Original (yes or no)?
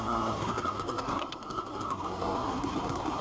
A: no